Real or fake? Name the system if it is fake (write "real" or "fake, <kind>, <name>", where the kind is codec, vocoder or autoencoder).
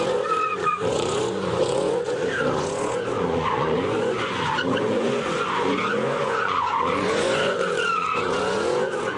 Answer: fake, vocoder, Vocos